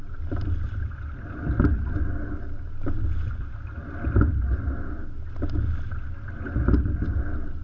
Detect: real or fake real